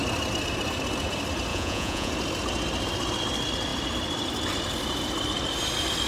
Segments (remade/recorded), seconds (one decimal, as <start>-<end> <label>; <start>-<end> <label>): 0.0-1.5 recorded; 1.5-2.1 remade; 2.1-6.1 recorded